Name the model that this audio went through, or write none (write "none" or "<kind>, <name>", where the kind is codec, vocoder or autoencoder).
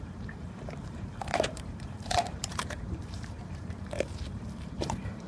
vocoder, BigVGAN v2